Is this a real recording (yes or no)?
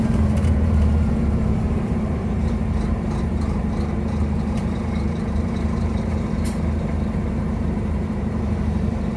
no